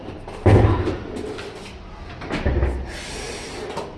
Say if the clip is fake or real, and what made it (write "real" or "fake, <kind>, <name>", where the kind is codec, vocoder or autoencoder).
real